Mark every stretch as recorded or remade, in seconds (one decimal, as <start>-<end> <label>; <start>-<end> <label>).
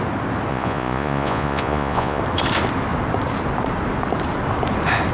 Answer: 0.0-0.5 recorded; 0.5-2.2 remade; 2.2-5.1 recorded